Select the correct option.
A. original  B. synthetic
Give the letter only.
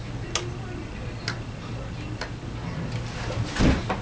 A